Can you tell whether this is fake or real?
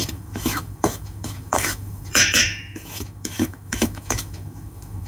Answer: fake